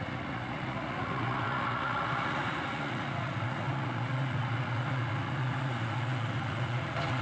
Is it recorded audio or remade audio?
remade